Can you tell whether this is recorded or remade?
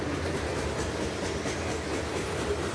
recorded